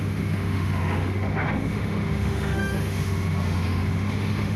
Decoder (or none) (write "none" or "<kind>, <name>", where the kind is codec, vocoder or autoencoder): autoencoder, DAC-VAE